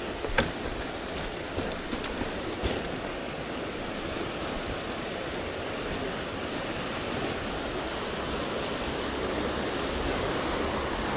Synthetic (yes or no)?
no